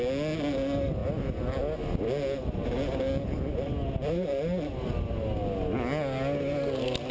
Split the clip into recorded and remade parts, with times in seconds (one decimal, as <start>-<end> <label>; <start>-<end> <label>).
0.0-7.1 recorded